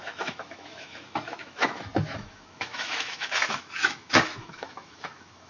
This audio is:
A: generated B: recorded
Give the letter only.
A